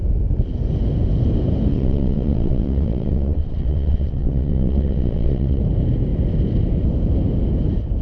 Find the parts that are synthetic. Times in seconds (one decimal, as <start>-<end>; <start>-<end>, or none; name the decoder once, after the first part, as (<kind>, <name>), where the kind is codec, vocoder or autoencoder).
1.7-5.6 (vocoder, WaveNeXt)